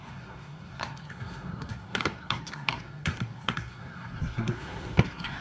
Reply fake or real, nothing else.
fake